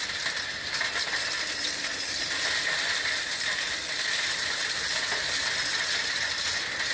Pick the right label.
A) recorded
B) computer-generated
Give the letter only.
B